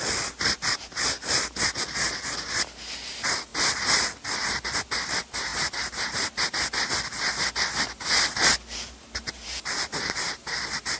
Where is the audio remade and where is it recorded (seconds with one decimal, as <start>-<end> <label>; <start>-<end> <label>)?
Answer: 0.0-11.0 recorded

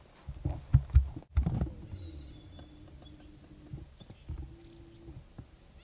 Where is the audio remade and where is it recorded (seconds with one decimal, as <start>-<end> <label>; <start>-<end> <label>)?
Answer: 0.0-5.8 recorded

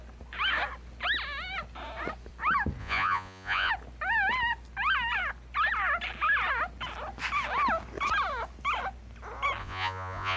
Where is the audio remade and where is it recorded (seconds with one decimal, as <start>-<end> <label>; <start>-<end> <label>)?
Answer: 0.0-2.8 recorded; 2.8-3.7 remade; 3.7-9.6 recorded; 9.6-10.4 remade

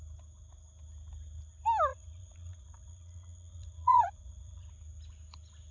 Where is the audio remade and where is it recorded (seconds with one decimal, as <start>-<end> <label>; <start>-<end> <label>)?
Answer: 0.0-1.9 recorded; 1.9-4.7 remade; 4.7-5.7 recorded

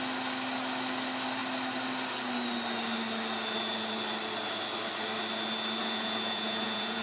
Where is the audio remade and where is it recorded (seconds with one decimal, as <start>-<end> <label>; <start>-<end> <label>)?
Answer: 0.0-5.8 recorded; 5.8-7.0 remade

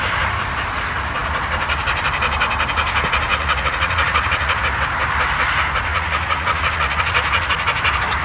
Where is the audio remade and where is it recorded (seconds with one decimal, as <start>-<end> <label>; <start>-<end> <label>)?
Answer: 0.0-3.3 recorded; 3.3-4.6 remade; 4.6-5.9 recorded; 5.9-7.7 remade; 7.7-8.2 recorded

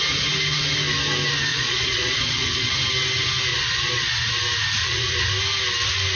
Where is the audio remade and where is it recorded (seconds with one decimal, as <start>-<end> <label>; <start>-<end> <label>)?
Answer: 0.0-1.5 recorded; 1.5-2.7 remade; 2.7-3.5 recorded; 3.5-4.3 remade; 4.3-4.8 recorded; 4.8-5.3 remade; 5.3-6.2 recorded